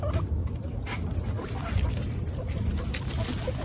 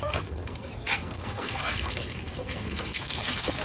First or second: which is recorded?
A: first